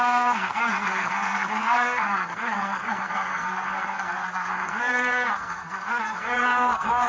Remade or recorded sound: remade